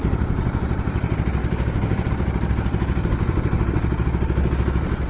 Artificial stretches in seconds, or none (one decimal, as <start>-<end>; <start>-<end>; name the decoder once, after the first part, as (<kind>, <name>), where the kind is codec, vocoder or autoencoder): 1.4-2.1 (codec, DAC)